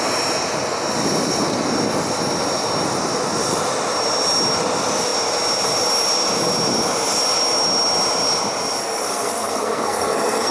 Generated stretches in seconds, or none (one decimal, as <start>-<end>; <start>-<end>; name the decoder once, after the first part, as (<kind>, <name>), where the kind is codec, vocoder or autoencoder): 8.8-10.5 (codec, SNAC)